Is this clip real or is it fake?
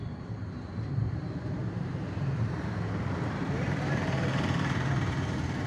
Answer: fake